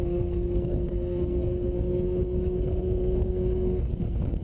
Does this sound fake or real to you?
fake